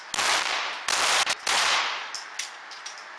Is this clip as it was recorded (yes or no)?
yes